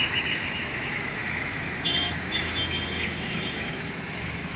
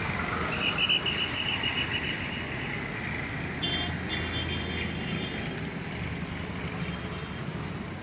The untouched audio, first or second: second